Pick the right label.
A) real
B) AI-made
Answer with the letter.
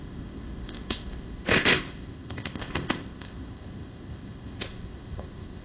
B